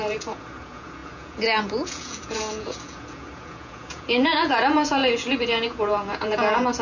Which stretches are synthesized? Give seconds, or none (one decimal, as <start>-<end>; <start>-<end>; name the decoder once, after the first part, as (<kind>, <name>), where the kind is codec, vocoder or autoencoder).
0.0-6.8 (vocoder, Vocos)